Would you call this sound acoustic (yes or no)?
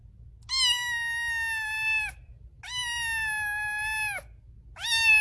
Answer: yes